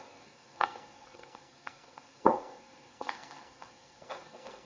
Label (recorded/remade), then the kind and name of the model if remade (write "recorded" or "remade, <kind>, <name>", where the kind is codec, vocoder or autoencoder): remade, codec, SNAC